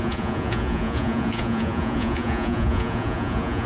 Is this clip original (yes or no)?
no